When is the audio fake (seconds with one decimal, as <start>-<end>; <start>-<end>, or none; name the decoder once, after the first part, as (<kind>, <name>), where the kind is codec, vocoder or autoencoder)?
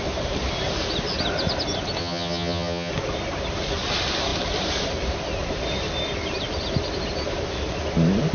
2.0-2.9 (vocoder, HiFi-GAN)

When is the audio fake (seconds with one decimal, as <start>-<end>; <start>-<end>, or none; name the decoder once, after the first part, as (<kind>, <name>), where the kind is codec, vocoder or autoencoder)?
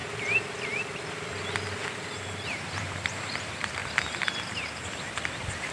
1.9-3.8 (vocoder, BigVGAN v2); 4.9-5.7